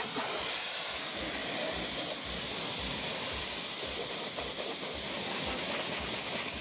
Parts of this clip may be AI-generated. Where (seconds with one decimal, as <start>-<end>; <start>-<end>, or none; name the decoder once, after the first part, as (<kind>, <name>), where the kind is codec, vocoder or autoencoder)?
1.4-5.4 (vocoder, BigVGAN v2)